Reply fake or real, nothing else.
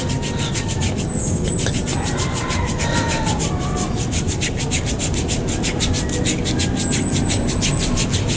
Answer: real